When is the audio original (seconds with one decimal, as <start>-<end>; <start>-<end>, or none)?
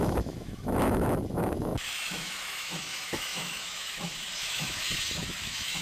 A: none